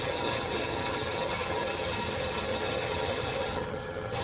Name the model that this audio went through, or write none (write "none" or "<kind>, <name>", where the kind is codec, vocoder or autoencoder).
vocoder, HiFi-GAN